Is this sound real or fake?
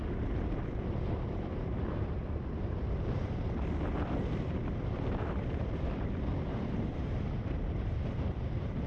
fake